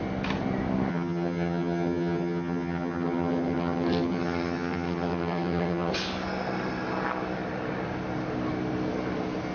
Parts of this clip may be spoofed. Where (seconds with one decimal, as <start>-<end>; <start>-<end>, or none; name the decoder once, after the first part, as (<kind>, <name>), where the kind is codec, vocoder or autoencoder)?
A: 0.9-5.9 (vocoder, HiFi-GAN)

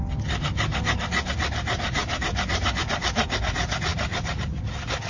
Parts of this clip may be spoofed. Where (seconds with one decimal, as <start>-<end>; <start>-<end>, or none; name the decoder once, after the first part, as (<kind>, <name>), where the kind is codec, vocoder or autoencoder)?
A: none

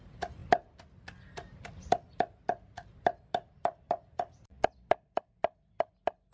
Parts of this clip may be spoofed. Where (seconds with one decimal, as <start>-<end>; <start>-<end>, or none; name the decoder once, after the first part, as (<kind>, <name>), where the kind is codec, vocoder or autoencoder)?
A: none

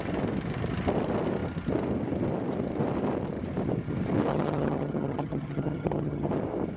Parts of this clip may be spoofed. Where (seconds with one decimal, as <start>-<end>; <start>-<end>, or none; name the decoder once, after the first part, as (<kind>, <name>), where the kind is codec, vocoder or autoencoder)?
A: 4.3-6.3 (vocoder, HiFi-GAN)

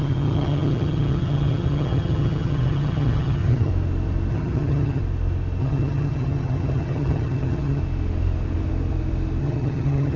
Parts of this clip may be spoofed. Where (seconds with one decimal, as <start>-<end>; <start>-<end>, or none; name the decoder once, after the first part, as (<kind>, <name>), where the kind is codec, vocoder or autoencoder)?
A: 0.0-3.7 (vocoder, HiFi-GAN); 4.3-5.0; 5.6-7.8; 9.4-10.2